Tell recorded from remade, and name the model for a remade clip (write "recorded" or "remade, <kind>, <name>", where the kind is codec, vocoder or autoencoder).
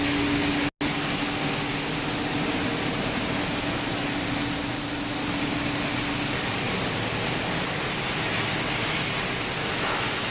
recorded